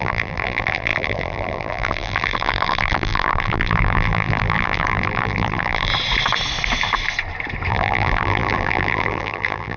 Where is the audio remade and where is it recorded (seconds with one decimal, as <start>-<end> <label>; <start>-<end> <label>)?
0.0-5.9 remade; 5.9-7.7 recorded; 7.7-9.8 remade